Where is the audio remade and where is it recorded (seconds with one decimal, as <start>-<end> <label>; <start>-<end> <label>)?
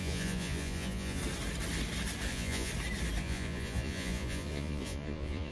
0.0-1.2 remade; 1.2-2.3 recorded; 2.3-2.7 remade; 2.7-3.2 recorded; 3.2-5.5 remade